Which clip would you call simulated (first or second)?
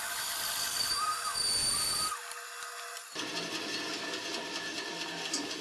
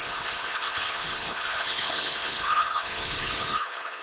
second